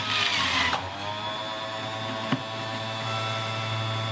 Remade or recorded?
recorded